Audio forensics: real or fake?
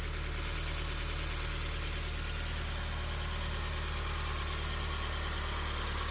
real